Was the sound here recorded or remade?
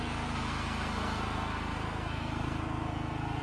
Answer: remade